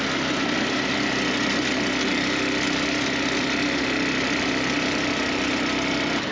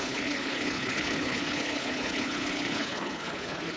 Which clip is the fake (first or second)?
second